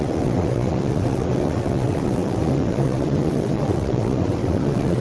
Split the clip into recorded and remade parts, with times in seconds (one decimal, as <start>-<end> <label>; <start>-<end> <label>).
0.0-5.0 remade